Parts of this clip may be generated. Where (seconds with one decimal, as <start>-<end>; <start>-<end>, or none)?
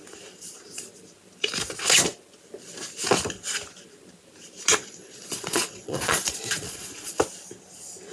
4.7-7.2